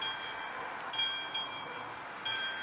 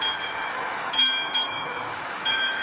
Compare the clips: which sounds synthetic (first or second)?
second